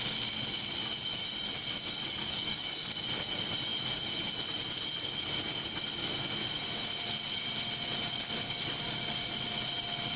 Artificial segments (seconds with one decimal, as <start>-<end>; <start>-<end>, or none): 2.2-2.9